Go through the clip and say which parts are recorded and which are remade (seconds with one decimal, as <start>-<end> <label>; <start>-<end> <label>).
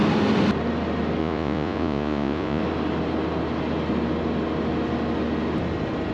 0.0-1.2 recorded; 1.2-2.6 remade; 2.6-6.1 recorded